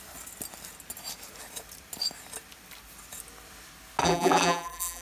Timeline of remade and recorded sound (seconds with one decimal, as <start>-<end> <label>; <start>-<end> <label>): 0.0-4.0 recorded; 4.0-5.0 remade